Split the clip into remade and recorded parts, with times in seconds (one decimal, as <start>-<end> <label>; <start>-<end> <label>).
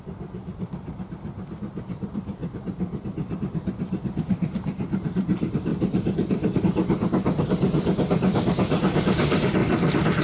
0.0-2.4 remade; 2.4-3.4 recorded; 3.4-9.6 remade; 9.6-10.2 recorded